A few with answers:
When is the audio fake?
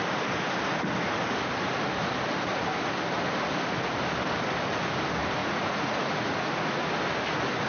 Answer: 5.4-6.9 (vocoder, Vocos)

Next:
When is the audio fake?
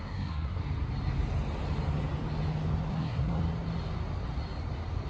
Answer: 0.0-0.6 (codec, SNAC); 2.9-3.4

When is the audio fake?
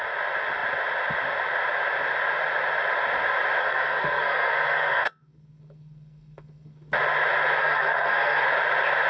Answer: 3.6-6.9 (codec, SNAC); 7.6-8.4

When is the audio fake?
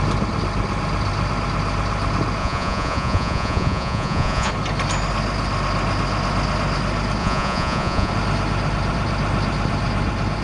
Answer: 2.4-4.5 (vocoder, Vocos); 7.2-8.1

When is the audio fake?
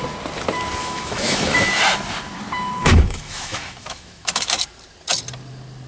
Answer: 0.8-1.8 (autoencoder, DAC-VAE); 2.8-4.6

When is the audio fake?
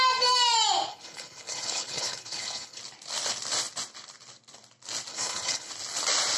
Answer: 0.9-2.8 (codec, HILCodec); 5.1-5.7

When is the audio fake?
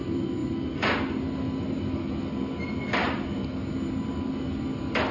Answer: none